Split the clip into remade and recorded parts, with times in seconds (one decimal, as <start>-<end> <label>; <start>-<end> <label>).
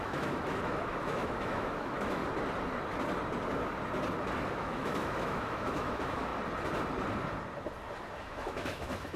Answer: 0.0-2.2 remade; 2.2-4.5 recorded; 4.5-6.3 remade; 6.3-8.2 recorded; 8.2-9.2 remade